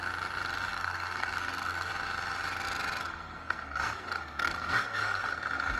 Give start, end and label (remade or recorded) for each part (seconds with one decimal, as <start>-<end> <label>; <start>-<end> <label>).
0.0-0.7 recorded; 0.7-1.9 remade; 1.9-3.0 recorded; 3.0-5.8 remade